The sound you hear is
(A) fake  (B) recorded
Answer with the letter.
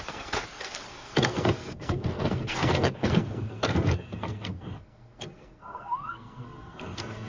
A